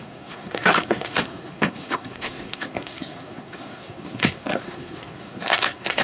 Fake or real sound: fake